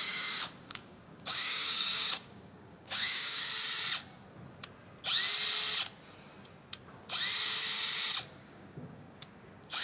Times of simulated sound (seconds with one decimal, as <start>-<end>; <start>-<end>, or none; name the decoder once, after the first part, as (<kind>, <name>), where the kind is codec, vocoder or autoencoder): 0.0-3.5 (codec, DAC); 8.4-9.8